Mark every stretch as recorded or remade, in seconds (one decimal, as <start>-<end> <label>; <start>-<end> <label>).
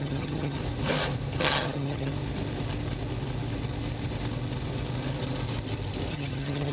0.0-0.6 remade; 0.6-1.4 recorded; 1.4-2.1 remade; 2.1-6.1 recorded; 6.1-6.7 remade